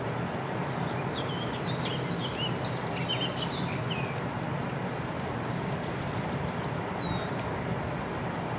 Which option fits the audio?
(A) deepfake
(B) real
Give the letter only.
B